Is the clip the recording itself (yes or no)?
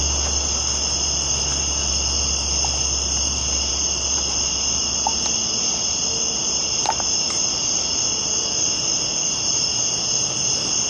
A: yes